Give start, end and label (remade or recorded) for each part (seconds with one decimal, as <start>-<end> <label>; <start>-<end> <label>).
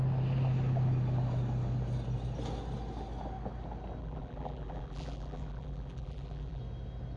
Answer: 0.0-4.0 recorded; 4.0-6.6 remade; 6.6-7.2 recorded